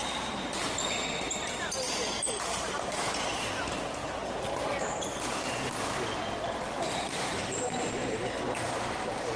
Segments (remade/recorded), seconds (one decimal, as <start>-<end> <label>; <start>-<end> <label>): 0.0-4.0 remade; 4.0-7.0 recorded; 7.0-9.4 remade